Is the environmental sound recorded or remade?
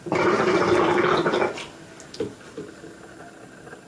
recorded